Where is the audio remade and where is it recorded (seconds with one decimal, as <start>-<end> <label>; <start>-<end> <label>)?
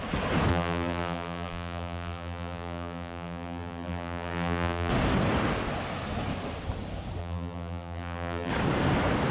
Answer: 0.0-0.5 recorded; 0.5-4.9 remade; 4.9-7.2 recorded; 7.2-8.5 remade; 8.5-9.3 recorded